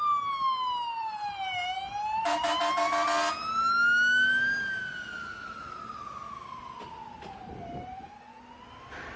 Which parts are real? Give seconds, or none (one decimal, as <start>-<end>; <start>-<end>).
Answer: 0.0-1.0; 2.5-9.2